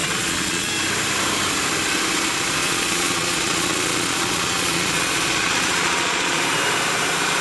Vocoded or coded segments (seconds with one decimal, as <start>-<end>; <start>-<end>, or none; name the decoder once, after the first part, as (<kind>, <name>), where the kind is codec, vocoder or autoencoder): 0.0-0.7 (vocoder, Vocos); 2.6-6.4

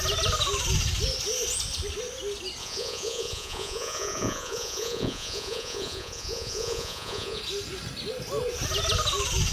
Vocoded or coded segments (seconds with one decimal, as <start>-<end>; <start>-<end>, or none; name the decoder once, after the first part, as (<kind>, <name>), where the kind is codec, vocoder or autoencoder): 2.6-7.4 (vocoder, Vocos)

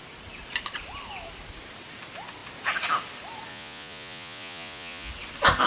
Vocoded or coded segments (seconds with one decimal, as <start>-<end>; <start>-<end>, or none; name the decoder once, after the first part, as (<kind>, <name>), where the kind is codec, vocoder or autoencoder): 3.5-5.1 (vocoder, Vocos)

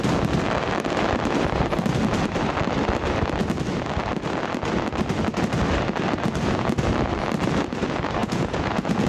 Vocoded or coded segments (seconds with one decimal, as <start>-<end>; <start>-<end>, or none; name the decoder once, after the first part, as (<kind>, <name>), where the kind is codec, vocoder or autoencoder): 8.2-9.1 (vocoder, Vocos)